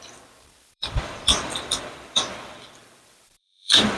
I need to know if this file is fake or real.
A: fake